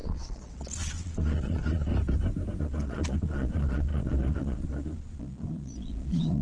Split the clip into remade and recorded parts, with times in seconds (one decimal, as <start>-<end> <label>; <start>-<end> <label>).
0.0-1.9 remade; 1.9-2.6 recorded; 2.6-6.4 remade